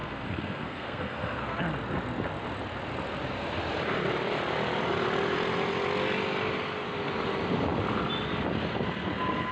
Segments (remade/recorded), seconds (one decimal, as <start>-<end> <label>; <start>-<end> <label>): 0.0-1.6 remade; 1.6-9.5 recorded